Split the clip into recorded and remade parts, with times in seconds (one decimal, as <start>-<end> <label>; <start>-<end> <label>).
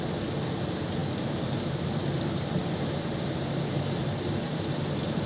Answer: 0.0-5.3 recorded